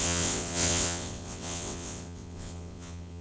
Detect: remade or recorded remade